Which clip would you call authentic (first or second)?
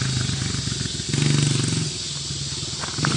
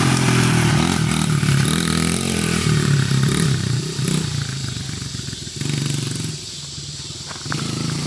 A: first